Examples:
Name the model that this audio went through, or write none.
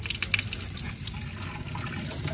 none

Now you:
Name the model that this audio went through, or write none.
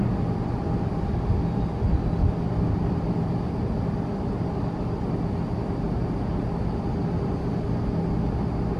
none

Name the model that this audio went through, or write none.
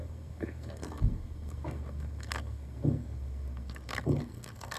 codec, SNAC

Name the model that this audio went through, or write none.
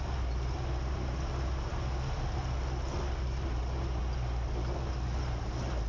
none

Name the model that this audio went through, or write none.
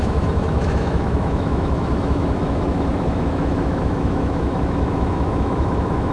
autoencoder, DAC-VAE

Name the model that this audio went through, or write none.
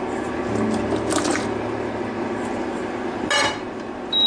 none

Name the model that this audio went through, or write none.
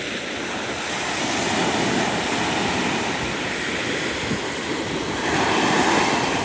none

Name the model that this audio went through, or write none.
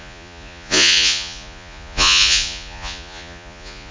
vocoder, Vocos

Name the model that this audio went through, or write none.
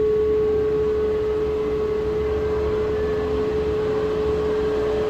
none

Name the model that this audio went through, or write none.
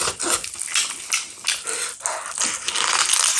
none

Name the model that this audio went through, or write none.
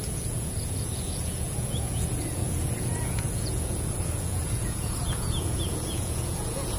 vocoder, Vocos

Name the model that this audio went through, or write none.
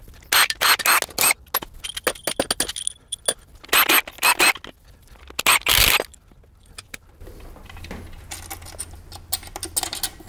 none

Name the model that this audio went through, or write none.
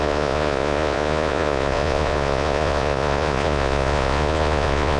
vocoder, Vocos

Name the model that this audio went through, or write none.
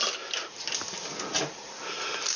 none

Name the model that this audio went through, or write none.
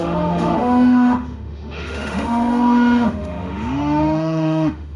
autoencoder, DAC-VAE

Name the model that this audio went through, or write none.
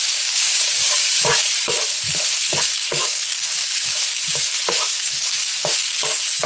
codec, DAC